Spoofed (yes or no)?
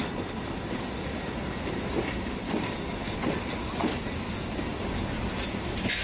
no